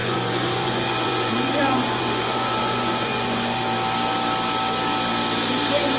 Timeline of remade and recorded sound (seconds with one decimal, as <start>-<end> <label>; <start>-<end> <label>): 0.0-3.6 remade; 3.6-6.0 recorded